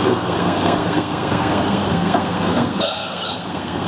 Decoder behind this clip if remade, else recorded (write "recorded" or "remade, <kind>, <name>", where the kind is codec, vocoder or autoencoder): remade, codec, SNAC